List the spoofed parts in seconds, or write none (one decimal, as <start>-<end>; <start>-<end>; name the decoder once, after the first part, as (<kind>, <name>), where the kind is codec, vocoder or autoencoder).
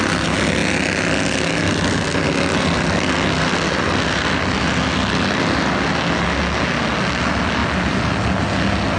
none